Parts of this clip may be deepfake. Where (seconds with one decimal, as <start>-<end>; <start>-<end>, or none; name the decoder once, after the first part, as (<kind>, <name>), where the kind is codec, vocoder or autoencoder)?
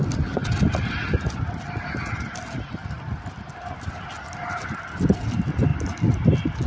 none